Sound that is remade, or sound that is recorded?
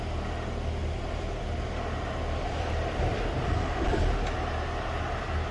recorded